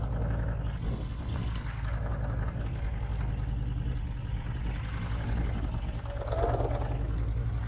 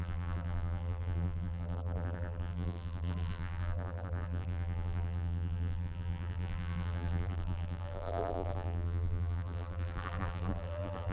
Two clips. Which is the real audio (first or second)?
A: first